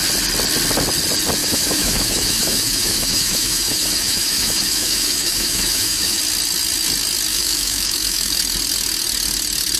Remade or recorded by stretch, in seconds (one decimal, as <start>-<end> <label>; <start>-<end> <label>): 0.0-1.4 recorded; 1.4-6.2 remade; 6.2-7.3 recorded; 7.3-8.4 remade; 8.4-9.8 recorded